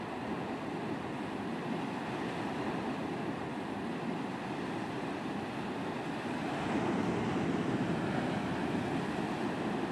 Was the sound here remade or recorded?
recorded